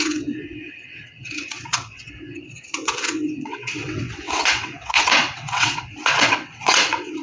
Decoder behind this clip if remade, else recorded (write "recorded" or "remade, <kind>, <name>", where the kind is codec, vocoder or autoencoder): remade, vocoder, WaveNeXt